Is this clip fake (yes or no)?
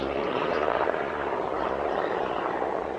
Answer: yes